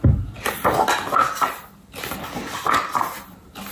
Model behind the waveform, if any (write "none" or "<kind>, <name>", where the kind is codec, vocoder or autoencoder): none